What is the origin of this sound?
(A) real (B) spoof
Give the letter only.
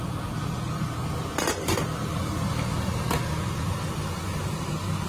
A